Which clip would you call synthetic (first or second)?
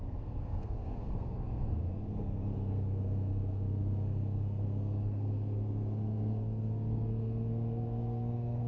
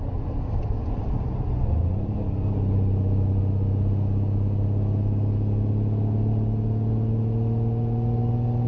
first